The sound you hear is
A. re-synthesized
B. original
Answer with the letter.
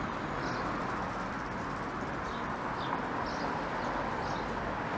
B